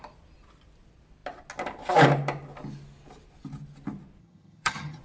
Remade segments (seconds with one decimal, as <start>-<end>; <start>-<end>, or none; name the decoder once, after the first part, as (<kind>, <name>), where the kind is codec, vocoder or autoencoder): 4.2-5.0 (vocoder, HiFi-GAN)